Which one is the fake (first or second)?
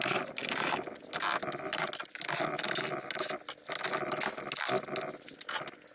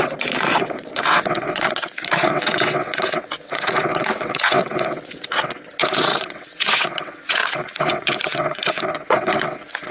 second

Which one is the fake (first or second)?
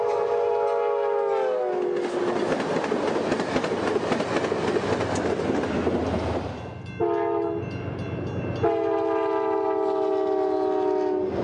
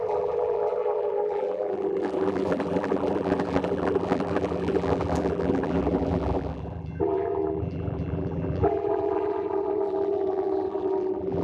second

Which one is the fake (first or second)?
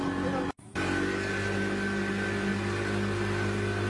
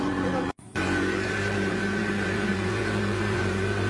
second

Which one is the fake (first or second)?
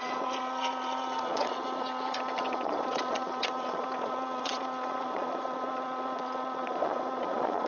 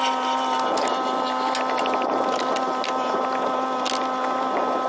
first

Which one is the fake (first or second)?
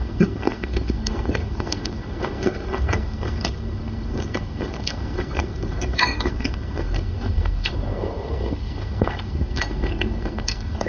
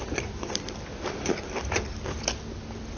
first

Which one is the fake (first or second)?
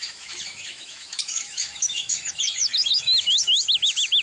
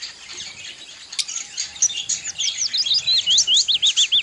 first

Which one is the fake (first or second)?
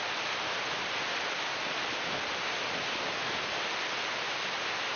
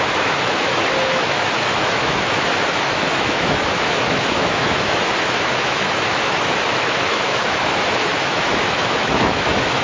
second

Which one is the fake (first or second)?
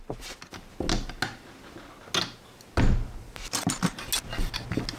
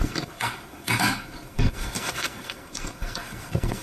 second